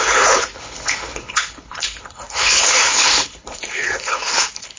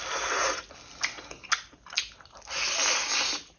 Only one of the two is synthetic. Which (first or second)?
first